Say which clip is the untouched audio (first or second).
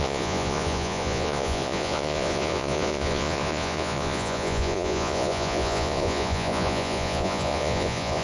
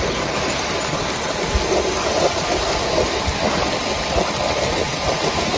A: second